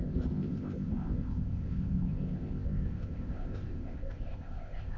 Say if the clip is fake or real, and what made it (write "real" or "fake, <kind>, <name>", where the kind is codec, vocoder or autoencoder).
fake, codec, ZipCodec